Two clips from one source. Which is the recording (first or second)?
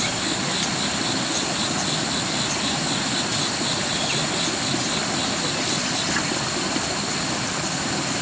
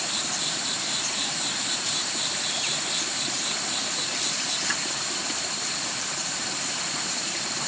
first